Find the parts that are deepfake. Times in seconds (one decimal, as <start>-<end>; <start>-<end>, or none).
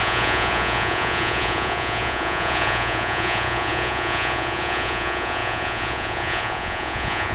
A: 0.0-7.3